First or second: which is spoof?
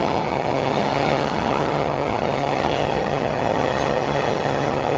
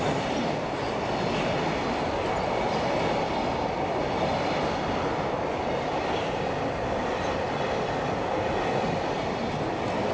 first